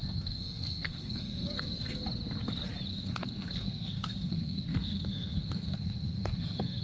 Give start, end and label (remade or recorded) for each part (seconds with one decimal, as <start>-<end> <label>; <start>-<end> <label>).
0.0-2.0 remade; 2.0-2.9 recorded; 2.9-6.8 remade